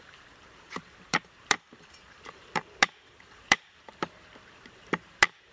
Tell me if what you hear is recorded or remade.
remade